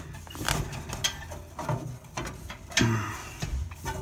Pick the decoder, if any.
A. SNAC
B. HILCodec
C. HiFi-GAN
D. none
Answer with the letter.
D